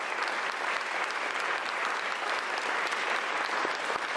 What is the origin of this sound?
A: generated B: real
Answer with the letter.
A